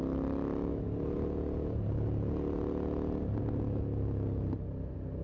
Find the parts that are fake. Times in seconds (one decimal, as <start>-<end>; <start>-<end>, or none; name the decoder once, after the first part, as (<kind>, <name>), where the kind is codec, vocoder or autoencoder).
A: none